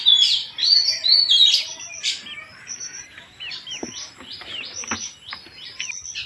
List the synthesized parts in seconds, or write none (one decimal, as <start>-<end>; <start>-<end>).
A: 2.5-5.8